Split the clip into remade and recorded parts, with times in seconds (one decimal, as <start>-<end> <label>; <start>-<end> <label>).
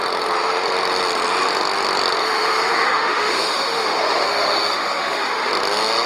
0.0-2.2 recorded; 2.2-5.5 remade; 5.5-6.1 recorded